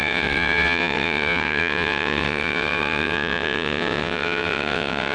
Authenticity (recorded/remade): remade